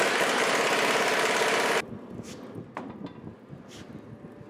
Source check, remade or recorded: recorded